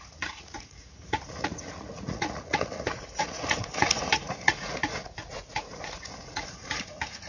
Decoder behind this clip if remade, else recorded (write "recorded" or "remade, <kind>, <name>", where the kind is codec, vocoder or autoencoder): remade, vocoder, Vocos